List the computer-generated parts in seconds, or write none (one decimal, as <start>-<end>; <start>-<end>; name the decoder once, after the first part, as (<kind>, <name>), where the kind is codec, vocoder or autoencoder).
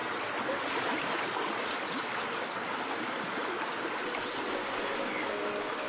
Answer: none